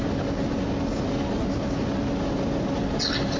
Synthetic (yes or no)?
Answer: no